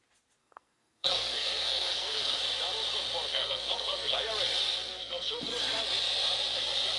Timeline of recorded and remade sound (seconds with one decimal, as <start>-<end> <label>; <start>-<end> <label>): 0.0-0.4 recorded; 0.4-2.4 remade; 2.4-3.3 recorded; 3.3-4.3 remade; 4.3-4.9 recorded; 4.9-5.4 remade; 5.4-7.0 recorded